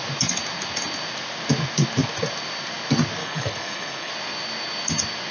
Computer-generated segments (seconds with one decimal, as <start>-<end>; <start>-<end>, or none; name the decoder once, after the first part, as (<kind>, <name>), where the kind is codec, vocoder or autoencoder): 3.2-4.1 (codec, HILCodec)